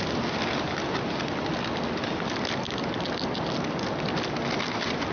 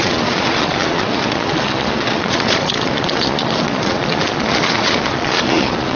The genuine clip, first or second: first